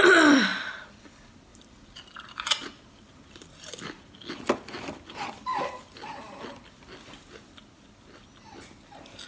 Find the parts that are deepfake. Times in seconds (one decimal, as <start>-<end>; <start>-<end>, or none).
1.5-3.7